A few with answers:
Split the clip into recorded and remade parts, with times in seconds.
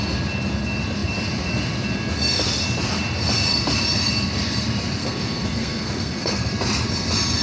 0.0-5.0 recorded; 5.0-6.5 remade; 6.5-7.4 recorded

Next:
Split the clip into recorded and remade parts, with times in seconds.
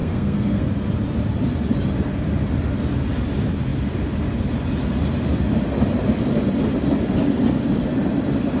0.0-0.6 remade; 0.6-8.6 recorded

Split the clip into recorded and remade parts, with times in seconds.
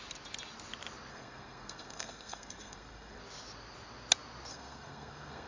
0.0-1.1 recorded; 1.1-3.2 remade; 3.2-4.5 recorded; 4.5-5.5 remade